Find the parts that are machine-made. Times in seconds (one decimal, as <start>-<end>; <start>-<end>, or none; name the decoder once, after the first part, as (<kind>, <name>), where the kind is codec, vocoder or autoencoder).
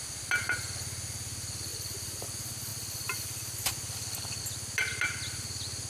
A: 1.7-2.2 (vocoder, BigVGAN v2); 2.7-4.4